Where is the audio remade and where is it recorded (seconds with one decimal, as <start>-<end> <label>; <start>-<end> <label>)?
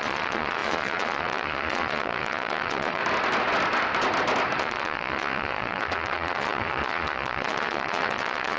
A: 0.0-3.0 remade; 3.0-4.6 recorded; 4.6-8.6 remade